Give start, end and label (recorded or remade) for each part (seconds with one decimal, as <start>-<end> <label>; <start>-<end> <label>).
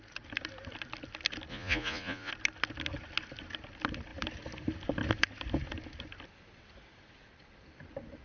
0.0-1.5 recorded; 1.5-2.3 remade; 2.3-8.2 recorded